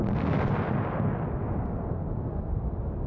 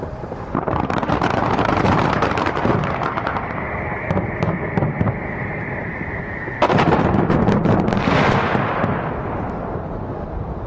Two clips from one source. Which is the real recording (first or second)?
first